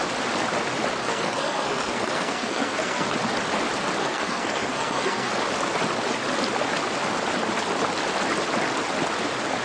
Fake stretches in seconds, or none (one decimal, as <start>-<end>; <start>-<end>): 1.0-3.1; 4.0-5.4